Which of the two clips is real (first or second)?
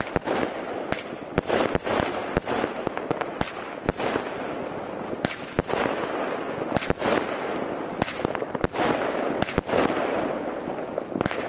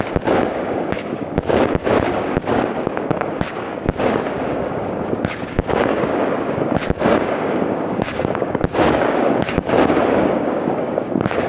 first